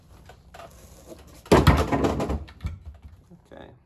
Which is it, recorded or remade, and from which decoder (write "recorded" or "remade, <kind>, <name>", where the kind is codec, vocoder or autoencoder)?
recorded